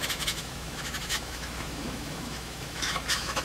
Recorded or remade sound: remade